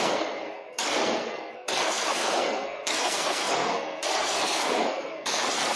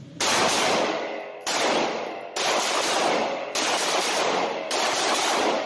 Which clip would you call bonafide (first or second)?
second